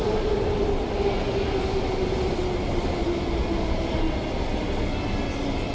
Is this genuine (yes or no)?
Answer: yes